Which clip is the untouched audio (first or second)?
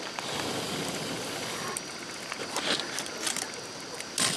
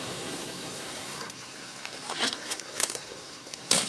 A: first